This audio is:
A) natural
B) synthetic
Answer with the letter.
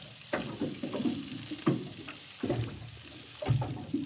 A